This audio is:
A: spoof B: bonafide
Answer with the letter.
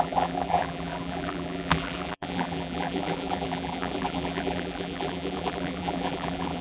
A